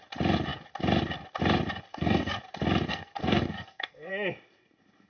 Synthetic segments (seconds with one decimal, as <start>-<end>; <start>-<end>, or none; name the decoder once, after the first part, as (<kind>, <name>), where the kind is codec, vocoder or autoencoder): 1.9-2.4 (codec, SNAC); 2.9-4.1

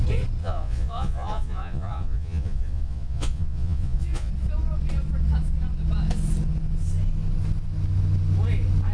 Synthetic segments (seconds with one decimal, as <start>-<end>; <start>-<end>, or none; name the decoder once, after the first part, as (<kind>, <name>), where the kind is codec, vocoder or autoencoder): 0.4-4.3 (vocoder, Vocos)

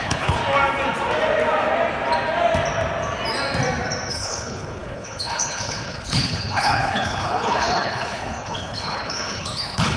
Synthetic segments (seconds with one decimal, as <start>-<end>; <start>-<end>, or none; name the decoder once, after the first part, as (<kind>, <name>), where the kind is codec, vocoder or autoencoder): 0.0-0.4 (codec, HILCodec); 4.1-10.0

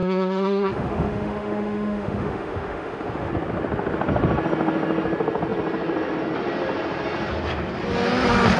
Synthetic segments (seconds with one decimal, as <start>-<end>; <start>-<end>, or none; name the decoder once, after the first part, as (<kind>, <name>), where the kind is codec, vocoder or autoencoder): 0.0-3.3 (autoencoder, DAC-VAE)

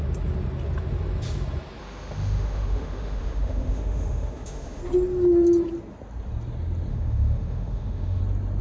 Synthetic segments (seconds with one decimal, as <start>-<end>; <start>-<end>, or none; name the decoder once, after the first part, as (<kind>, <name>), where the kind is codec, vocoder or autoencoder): 1.8-4.8 (autoencoder, DAC-VAE); 6.9-8.2

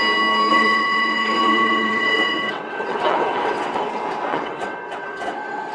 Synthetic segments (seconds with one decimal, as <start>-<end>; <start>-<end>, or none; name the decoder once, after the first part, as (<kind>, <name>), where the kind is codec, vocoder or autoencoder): 0.5-3.9 (vocoder, WaveNeXt); 4.3-5.7

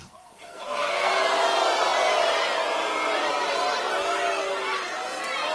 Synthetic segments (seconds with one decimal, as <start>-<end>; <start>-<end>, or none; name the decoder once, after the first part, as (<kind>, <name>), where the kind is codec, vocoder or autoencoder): 0.0-1.1 (codec, SNAC)